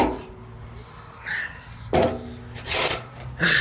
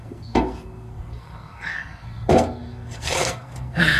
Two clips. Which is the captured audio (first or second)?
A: first